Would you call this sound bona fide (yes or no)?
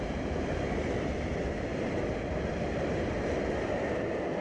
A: yes